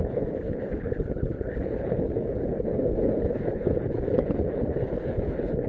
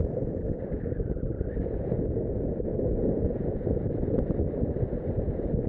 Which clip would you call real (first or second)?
second